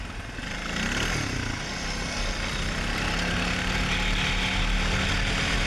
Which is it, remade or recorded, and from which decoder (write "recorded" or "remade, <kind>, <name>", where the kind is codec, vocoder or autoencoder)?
recorded